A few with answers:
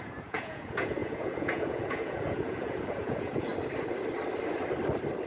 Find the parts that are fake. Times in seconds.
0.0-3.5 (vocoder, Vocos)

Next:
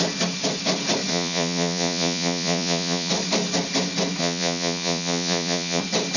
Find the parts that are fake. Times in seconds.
1.1-3.1 (vocoder, Vocos); 4.2-5.8

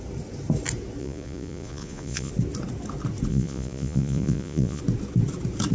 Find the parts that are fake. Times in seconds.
1.0-2.3 (vocoder, Vocos); 3.3-4.8